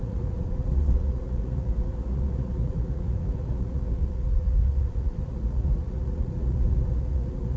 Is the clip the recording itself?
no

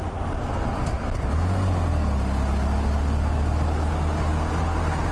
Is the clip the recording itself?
yes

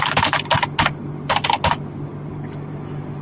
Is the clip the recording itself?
yes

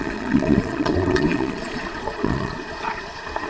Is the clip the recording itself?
no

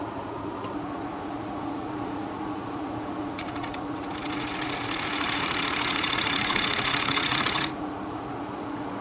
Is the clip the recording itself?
no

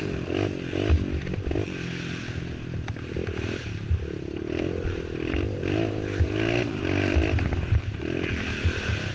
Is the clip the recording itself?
yes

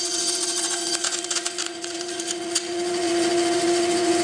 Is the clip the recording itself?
no